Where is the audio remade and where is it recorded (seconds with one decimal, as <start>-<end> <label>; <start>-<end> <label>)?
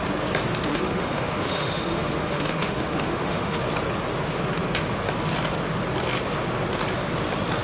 0.0-0.7 recorded; 0.7-3.6 remade; 3.6-7.6 recorded